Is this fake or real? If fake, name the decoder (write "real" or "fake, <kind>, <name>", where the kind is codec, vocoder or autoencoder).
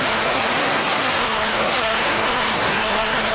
fake, codec, SNAC